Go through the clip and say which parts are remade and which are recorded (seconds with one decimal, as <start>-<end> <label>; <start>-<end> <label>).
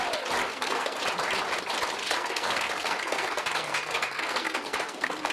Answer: 0.0-0.4 recorded; 0.4-1.0 remade; 1.0-2.0 recorded; 2.0-5.3 remade